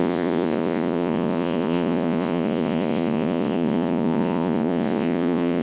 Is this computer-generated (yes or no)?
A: yes